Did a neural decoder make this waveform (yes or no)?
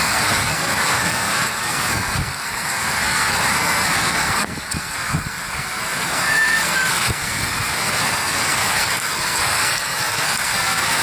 yes